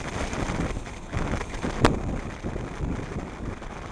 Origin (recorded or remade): recorded